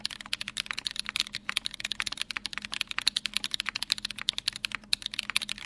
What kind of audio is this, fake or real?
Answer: real